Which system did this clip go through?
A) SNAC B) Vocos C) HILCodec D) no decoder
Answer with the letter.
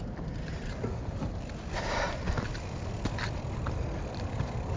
D